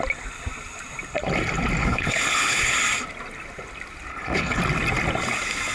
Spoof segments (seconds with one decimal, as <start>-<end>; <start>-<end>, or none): 1.8-2.7; 4.1-4.6